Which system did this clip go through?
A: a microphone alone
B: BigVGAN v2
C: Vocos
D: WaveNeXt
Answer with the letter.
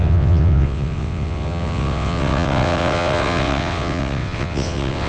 D